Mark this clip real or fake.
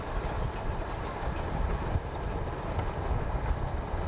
fake